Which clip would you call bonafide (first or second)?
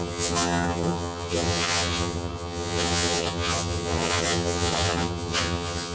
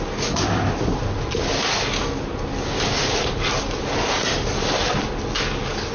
second